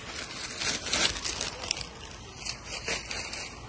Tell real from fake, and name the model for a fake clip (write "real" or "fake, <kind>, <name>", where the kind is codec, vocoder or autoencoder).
real